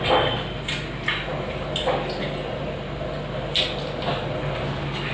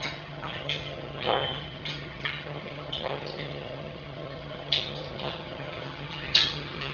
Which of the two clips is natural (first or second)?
first